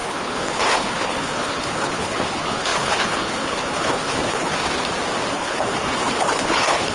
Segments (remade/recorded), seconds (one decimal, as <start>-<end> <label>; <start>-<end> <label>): 0.0-4.5 remade; 4.5-5.3 recorded; 5.3-6.9 remade